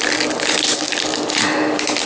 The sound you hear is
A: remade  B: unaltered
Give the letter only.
B